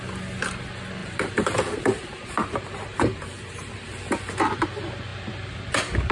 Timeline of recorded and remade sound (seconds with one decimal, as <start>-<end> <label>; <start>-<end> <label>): 0.0-1.0 recorded; 1.0-4.3 remade; 4.3-6.1 recorded